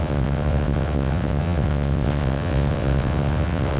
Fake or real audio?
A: fake